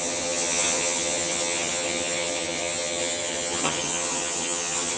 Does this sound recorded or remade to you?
remade